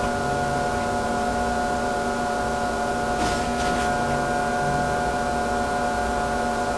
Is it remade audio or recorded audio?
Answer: recorded